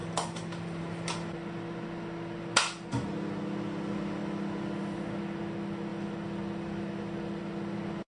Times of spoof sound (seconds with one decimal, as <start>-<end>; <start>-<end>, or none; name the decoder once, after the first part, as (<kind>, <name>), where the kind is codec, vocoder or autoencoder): 0.0-0.8 (vocoder, BigVGAN v2); 5.9-7.4